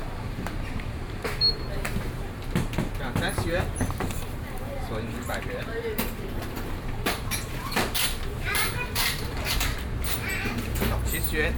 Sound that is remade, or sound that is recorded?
remade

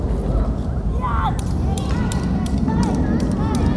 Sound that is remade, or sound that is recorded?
recorded